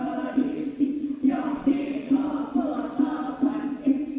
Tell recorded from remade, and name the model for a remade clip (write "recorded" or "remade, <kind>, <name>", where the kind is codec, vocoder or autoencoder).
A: remade, vocoder, WaveNeXt